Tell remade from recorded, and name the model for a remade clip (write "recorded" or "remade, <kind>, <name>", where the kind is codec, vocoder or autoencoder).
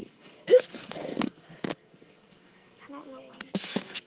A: remade, codec, SNAC